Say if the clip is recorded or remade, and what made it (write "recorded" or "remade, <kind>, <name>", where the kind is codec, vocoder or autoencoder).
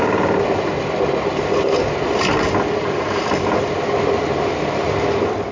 recorded